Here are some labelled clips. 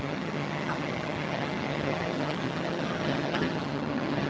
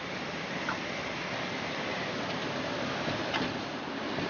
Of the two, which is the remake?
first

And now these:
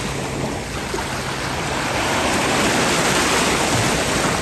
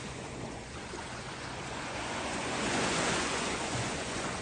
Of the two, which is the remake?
second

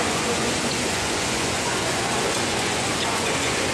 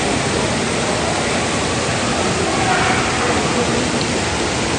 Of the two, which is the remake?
first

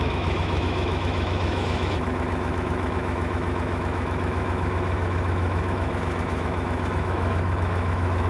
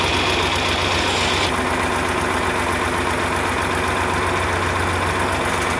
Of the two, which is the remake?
first